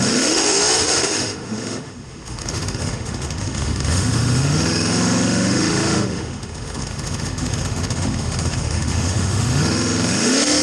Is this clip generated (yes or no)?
yes